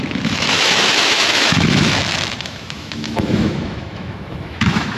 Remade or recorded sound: remade